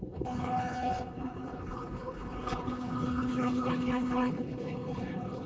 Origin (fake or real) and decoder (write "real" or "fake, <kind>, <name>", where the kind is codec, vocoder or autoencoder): fake, codec, HILCodec